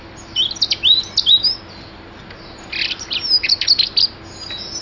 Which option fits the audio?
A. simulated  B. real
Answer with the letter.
B